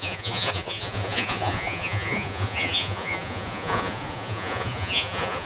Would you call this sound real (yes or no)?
no